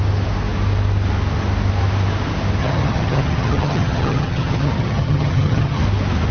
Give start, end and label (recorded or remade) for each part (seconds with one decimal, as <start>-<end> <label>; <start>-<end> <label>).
0.0-2.6 recorded; 2.6-5.8 remade; 5.8-6.3 recorded